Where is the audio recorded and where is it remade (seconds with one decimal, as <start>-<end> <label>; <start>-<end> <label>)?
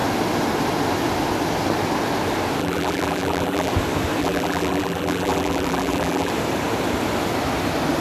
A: 0.0-2.6 recorded; 2.6-3.7 remade; 3.7-4.2 recorded; 4.2-6.3 remade; 6.3-8.0 recorded